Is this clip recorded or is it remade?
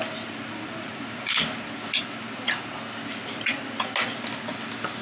recorded